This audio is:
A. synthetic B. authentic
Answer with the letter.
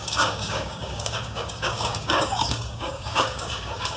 A